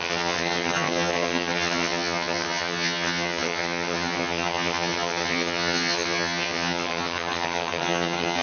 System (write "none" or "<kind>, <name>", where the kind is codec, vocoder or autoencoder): vocoder, HiFi-GAN